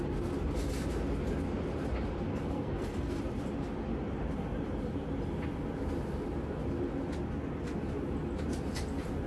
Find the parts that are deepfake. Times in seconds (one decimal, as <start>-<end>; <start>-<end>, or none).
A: 2.3-3.2